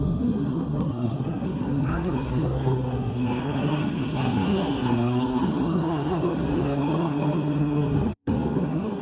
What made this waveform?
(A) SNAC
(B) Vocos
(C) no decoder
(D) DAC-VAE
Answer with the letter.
A